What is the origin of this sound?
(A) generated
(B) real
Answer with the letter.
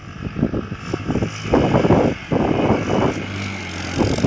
B